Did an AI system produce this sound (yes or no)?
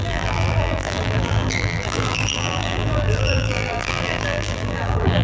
yes